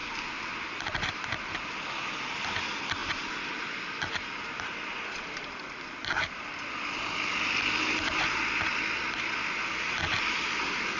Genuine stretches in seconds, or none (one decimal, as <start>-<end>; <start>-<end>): 0.0-11.0